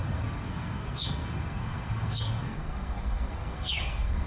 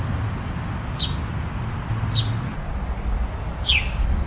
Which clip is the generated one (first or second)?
first